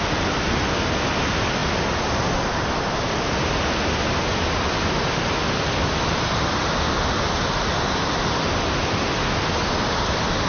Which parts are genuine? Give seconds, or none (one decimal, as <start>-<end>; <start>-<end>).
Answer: 0.0-10.5